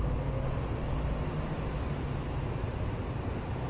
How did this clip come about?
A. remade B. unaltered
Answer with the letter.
B